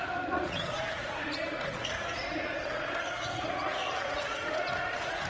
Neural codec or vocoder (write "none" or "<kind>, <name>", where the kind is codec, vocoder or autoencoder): vocoder, Vocos